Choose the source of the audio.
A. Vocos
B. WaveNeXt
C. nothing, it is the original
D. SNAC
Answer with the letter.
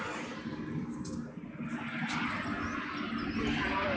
C